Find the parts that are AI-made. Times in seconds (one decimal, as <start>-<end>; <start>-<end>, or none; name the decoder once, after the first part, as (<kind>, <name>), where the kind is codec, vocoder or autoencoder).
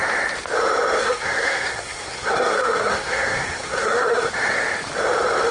1.0-4.3 (codec, SNAC)